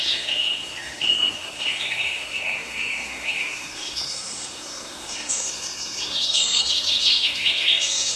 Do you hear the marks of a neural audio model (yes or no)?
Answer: yes